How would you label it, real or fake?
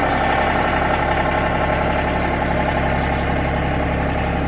real